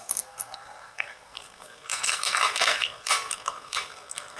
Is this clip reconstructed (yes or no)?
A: yes